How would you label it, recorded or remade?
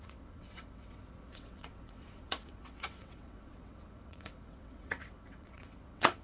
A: remade